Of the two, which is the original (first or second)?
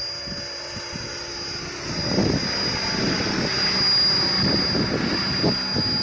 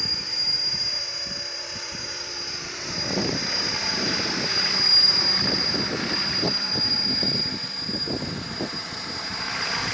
first